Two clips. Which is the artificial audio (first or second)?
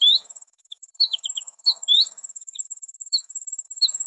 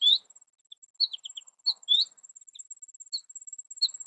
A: first